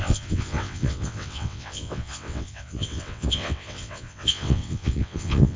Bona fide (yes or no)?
no